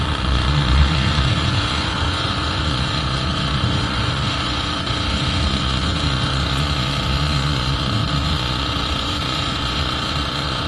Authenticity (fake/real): fake